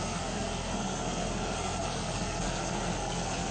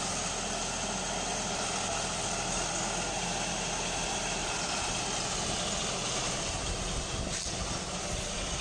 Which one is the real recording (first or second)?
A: second